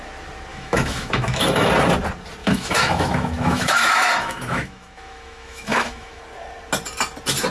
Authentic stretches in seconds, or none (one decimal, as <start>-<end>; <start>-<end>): 0.0-0.5; 1.7-2.4; 6.2-7.5

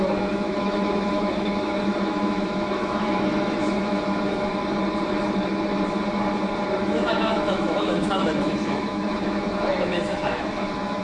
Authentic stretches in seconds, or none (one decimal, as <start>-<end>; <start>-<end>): 4.5-6.8